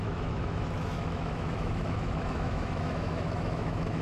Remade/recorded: remade